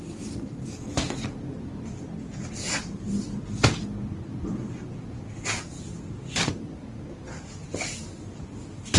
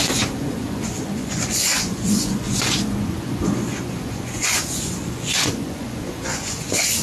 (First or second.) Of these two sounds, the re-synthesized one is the second